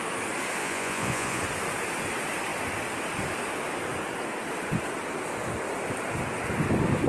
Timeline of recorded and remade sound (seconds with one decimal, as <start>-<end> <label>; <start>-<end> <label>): 0.0-0.6 recorded; 0.6-1.4 remade; 1.4-7.1 recorded